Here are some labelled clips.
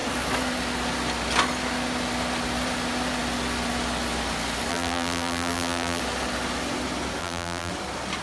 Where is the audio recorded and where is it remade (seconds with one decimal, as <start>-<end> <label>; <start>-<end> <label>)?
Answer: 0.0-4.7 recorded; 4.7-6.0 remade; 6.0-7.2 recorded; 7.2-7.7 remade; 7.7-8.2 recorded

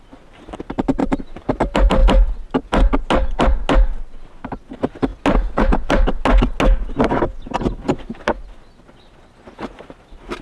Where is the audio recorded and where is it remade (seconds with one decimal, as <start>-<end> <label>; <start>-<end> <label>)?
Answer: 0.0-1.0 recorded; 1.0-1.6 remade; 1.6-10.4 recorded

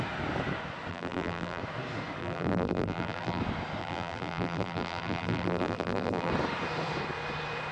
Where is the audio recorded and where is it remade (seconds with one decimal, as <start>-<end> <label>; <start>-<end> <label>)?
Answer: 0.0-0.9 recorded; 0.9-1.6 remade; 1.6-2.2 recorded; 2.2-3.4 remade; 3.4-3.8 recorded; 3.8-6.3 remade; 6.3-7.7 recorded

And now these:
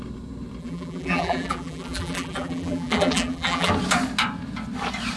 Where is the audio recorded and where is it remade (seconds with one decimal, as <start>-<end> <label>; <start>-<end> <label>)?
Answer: 0.0-0.6 recorded; 0.6-3.7 remade; 3.7-5.2 recorded

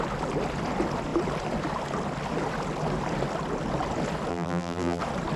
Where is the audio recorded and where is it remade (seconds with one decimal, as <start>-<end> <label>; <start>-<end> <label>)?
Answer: 0.0-4.3 recorded; 4.3-5.0 remade; 5.0-5.4 recorded

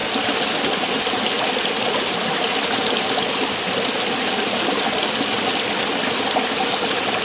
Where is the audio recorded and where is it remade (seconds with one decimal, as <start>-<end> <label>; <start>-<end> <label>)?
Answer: 0.0-7.2 recorded

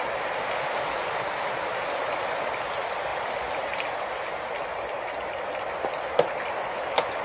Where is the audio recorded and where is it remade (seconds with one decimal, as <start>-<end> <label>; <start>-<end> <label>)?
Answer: 0.0-7.2 recorded

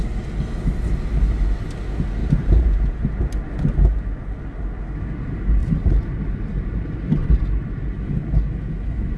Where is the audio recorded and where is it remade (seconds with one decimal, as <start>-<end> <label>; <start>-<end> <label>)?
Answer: 0.0-2.2 recorded; 2.2-3.1 remade; 3.1-5.6 recorded; 5.6-7.4 remade; 7.4-9.2 recorded